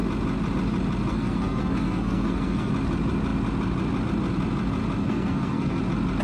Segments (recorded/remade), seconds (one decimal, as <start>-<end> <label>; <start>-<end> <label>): 0.0-1.1 recorded; 1.1-2.7 remade; 2.7-5.0 recorded; 5.0-5.8 remade; 5.8-6.2 recorded